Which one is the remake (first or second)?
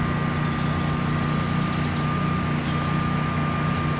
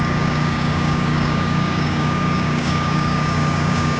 second